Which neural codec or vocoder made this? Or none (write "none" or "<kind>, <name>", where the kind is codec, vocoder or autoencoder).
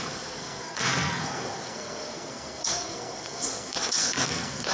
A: codec, SNAC